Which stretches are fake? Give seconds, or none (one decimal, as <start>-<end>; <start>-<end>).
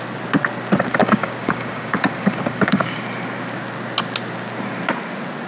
1.0-3.0